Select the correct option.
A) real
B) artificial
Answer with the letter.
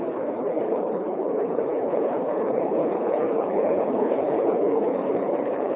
B